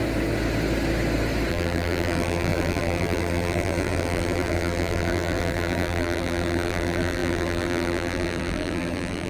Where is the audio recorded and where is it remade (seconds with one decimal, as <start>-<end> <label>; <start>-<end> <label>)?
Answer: 0.0-1.5 recorded; 1.5-9.3 remade